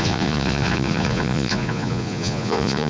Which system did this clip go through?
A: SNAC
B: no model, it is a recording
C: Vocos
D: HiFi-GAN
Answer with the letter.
C